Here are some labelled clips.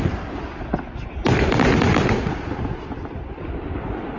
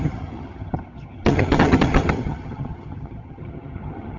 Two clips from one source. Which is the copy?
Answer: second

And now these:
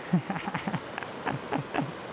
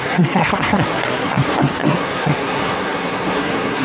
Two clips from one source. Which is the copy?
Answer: second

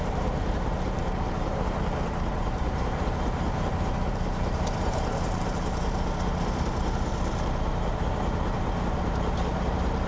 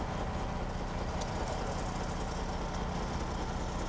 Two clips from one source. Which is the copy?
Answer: first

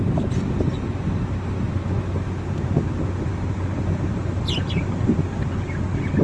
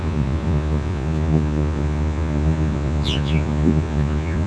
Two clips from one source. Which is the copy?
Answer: second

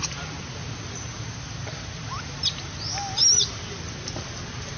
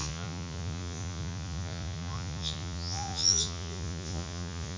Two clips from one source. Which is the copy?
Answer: second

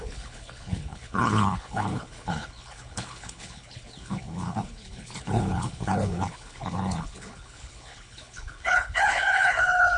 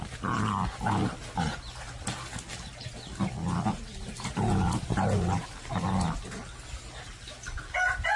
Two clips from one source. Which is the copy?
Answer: first